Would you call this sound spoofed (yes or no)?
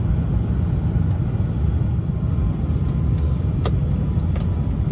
no